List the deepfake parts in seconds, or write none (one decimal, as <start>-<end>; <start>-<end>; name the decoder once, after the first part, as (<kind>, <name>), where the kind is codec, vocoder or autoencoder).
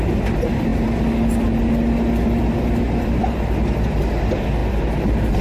none